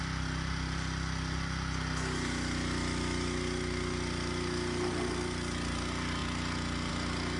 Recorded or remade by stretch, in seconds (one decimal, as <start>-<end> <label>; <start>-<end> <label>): 0.0-7.4 recorded